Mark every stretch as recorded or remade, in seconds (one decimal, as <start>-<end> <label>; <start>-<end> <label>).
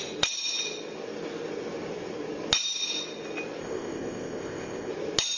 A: 0.0-3.6 recorded; 3.6-4.9 remade; 4.9-5.4 recorded